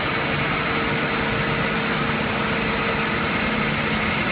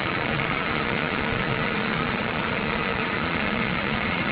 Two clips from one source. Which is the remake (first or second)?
second